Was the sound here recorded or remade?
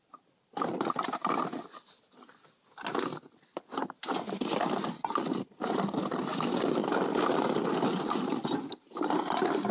recorded